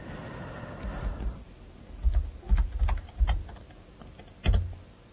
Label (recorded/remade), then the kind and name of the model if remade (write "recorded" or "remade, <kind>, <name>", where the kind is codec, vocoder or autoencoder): recorded